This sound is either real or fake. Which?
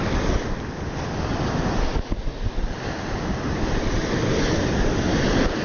real